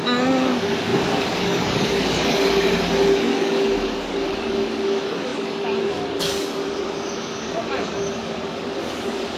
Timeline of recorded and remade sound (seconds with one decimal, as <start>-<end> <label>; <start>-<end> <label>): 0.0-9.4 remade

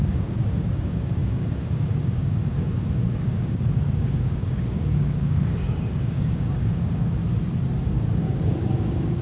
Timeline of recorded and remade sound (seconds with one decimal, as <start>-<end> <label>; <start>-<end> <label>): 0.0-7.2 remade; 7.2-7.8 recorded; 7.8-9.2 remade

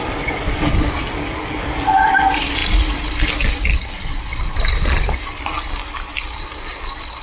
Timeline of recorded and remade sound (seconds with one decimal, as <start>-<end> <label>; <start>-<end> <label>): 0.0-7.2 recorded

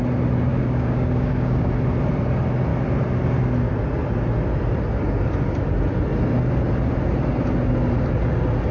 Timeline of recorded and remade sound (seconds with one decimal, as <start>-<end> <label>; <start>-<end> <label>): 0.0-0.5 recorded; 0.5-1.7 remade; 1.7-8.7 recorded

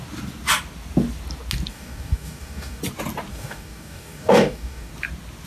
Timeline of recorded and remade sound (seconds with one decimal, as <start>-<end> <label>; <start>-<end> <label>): 0.0-1.7 recorded; 1.7-2.8 remade; 2.8-3.3 recorded; 3.3-4.9 remade; 4.9-5.5 recorded

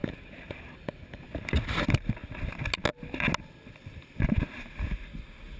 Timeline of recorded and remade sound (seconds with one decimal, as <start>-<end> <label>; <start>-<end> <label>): 0.0-5.6 recorded